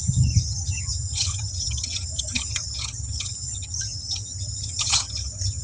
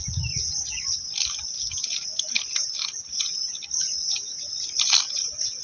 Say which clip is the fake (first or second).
first